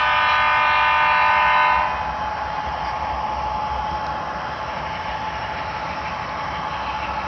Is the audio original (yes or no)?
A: yes